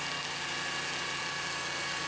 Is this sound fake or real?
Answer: real